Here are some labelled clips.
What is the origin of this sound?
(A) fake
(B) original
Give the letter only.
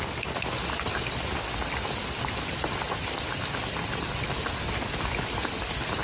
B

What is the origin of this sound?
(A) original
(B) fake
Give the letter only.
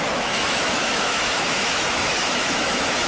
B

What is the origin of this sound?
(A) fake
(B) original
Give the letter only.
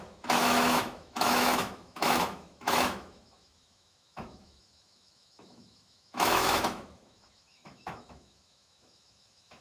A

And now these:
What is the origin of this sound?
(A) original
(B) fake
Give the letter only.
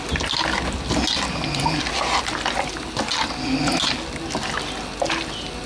A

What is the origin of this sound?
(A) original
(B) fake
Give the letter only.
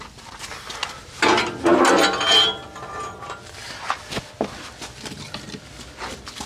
A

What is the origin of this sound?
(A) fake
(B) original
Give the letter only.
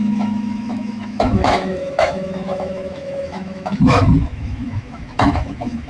A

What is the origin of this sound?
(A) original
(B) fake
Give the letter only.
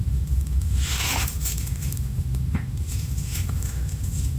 B